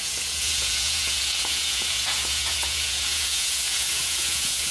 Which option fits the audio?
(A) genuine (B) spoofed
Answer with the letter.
B